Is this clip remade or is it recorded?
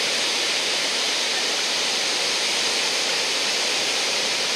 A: remade